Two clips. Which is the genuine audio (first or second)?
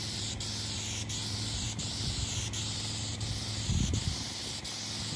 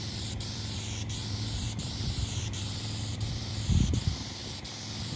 first